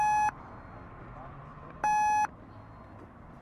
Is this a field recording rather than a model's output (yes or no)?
yes